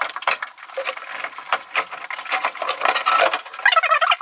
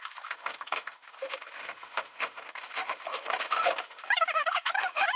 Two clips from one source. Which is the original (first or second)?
first